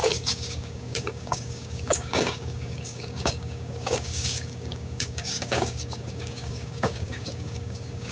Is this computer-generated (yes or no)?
yes